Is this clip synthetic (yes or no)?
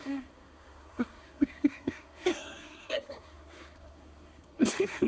yes